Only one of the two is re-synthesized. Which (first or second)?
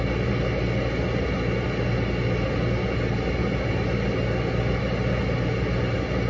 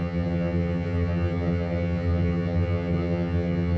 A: second